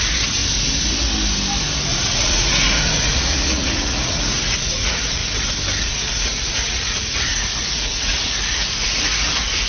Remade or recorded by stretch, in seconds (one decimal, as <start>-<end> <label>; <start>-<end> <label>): 0.0-0.4 remade; 0.4-1.9 recorded; 1.9-5.2 remade; 5.2-5.8 recorded; 5.8-9.7 remade